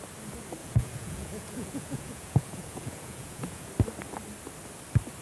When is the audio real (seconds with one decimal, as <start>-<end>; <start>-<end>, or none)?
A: 0.0-0.6; 3.7-5.2